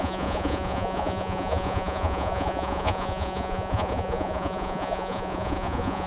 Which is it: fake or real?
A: fake